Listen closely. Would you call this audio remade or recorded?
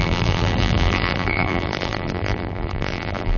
remade